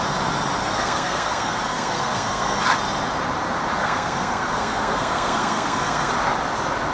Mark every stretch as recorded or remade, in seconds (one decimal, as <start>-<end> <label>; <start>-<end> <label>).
0.0-0.6 recorded; 0.6-2.6 remade; 2.6-3.8 recorded; 3.8-6.1 remade; 6.1-6.9 recorded